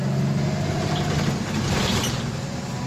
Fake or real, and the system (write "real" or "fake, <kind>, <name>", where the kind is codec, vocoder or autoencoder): real